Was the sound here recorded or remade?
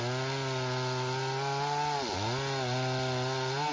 recorded